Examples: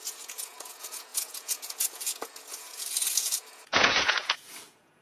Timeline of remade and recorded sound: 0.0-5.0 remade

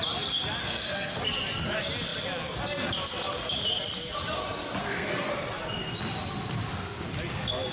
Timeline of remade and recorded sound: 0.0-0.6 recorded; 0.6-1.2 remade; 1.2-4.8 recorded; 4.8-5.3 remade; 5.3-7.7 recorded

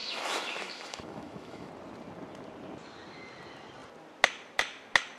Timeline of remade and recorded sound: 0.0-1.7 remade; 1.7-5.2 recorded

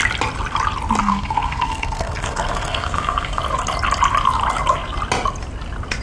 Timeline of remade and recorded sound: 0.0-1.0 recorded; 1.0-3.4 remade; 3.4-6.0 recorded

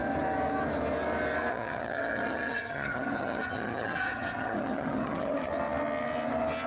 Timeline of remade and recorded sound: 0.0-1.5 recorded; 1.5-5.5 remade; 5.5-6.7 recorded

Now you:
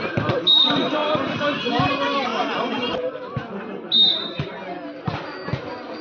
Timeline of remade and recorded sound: 0.0-1.0 remade; 1.0-1.6 recorded; 1.6-2.3 remade; 2.3-6.0 recorded

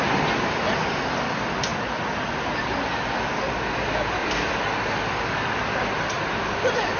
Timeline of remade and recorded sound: 0.0-4.2 recorded; 4.2-6.6 remade; 6.6-7.0 recorded